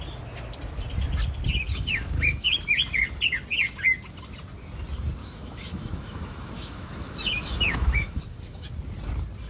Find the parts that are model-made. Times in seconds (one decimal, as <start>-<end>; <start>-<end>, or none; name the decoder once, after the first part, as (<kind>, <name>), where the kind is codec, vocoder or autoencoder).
1.7-2.6 (autoencoder, DAC-VAE); 5.2-8.7